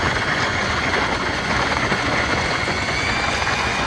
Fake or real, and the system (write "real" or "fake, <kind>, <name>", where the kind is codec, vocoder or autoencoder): fake, vocoder, Vocos